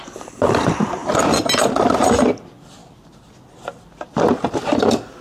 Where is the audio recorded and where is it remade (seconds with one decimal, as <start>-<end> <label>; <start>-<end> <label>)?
0.0-1.0 remade; 1.0-2.3 recorded; 2.3-2.8 remade; 2.8-5.2 recorded